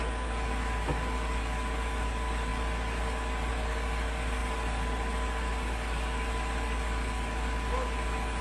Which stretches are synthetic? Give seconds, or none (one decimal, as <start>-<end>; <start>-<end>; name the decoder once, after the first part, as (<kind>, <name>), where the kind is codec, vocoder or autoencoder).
0.0-8.4 (codec, DAC)